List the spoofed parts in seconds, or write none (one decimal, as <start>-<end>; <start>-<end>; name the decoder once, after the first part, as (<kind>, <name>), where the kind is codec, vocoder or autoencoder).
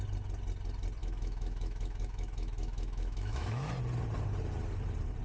1.0-3.7 (autoencoder, DAC-VAE)